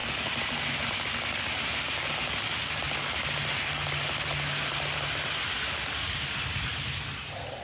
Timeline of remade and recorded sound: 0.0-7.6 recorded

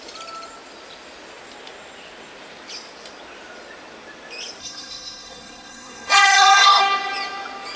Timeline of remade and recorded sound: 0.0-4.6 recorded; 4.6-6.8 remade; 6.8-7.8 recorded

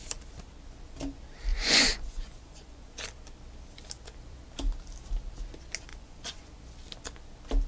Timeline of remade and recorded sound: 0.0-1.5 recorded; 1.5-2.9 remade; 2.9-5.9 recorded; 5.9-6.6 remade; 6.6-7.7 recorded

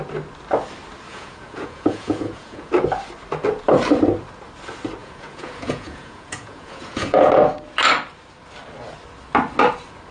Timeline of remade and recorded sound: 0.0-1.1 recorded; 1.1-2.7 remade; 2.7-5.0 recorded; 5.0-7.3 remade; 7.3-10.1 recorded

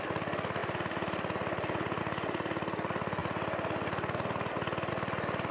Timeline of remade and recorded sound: 0.0-5.5 recorded

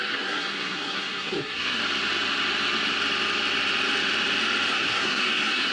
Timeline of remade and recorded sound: 0.0-1.8 remade; 1.8-4.7 recorded; 4.7-5.7 remade

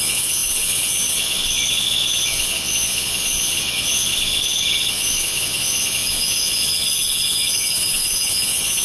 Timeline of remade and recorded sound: 0.0-8.8 remade